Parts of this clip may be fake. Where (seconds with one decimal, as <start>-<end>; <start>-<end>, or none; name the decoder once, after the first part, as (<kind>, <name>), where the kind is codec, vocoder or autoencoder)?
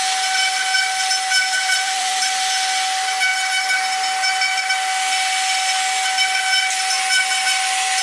1.6-2.2 (vocoder, BigVGAN v2)